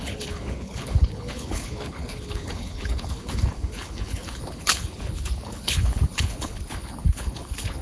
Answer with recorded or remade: remade